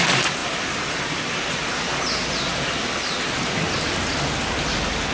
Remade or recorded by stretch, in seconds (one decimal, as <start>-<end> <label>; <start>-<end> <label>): 0.0-5.1 recorded